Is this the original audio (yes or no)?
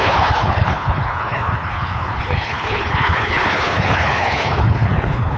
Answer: no